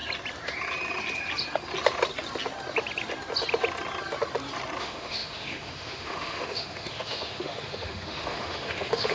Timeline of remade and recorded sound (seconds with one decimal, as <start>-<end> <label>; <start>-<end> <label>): 0.0-4.8 recorded; 4.8-9.1 remade